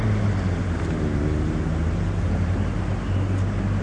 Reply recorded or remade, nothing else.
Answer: recorded